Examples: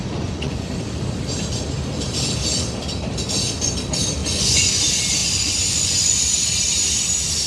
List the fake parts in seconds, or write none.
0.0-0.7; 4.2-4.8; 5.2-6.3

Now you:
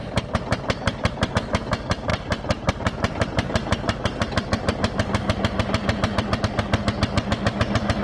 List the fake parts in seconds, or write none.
none

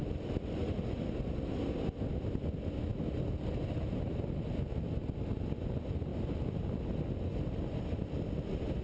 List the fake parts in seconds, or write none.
none

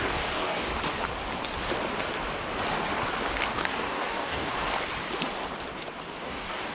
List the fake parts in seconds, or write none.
0.0-0.7; 3.5-4.7; 6.2-6.7

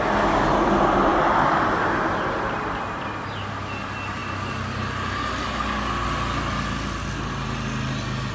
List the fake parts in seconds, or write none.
none

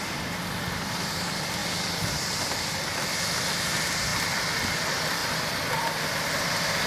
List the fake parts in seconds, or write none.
0.0-6.9

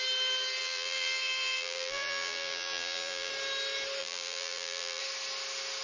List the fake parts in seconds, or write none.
0.6-3.3; 4.0-5.0